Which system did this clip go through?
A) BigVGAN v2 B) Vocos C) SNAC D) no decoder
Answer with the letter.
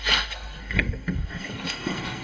C